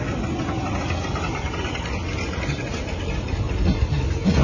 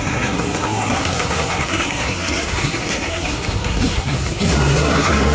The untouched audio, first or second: first